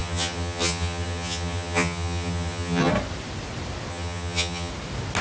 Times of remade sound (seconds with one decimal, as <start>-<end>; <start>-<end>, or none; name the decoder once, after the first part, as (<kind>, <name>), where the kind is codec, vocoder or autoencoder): 0.0-2.9 (vocoder, HiFi-GAN); 3.9-4.7